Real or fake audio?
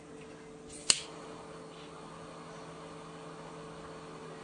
real